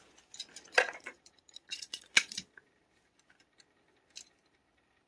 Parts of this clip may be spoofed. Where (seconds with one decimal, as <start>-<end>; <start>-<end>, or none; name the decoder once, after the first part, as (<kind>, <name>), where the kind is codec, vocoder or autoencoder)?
0.7-2.4 (vocoder, Vocos)